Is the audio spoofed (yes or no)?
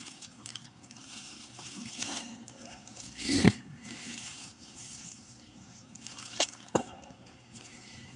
yes